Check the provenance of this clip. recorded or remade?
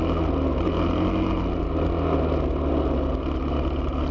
recorded